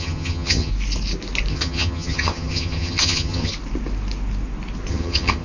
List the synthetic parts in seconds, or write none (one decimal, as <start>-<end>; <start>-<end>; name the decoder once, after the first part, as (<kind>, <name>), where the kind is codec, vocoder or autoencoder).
0.0-0.7 (vocoder, HiFi-GAN); 1.5-3.5; 4.9-5.4